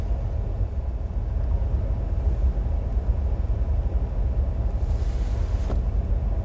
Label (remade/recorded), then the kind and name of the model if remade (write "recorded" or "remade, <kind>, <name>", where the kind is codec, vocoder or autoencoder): recorded